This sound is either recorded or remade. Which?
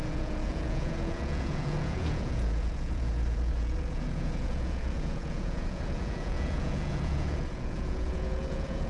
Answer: remade